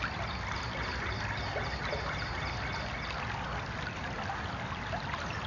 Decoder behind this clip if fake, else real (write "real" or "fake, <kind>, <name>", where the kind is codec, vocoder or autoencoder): real